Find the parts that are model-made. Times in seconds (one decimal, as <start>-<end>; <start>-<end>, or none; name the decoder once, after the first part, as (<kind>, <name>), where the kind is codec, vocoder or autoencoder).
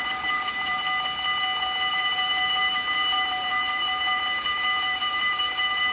0.0-0.8 (vocoder, BigVGAN v2); 1.9-5.9